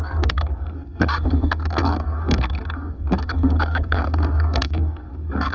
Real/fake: fake